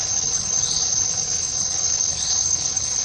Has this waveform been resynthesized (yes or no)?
yes